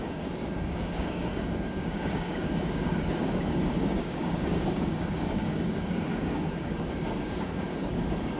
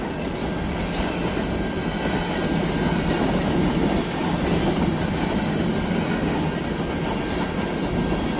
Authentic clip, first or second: second